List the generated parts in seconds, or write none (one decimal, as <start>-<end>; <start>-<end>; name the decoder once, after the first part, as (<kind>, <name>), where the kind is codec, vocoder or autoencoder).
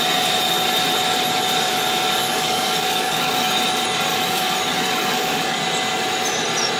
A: 2.2-3.5 (codec, DAC); 4.1-5.6